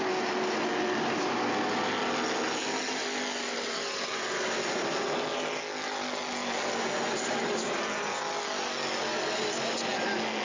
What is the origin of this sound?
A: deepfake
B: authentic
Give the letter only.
B